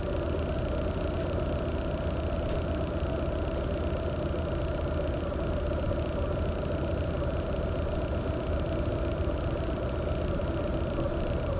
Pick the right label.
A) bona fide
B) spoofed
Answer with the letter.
B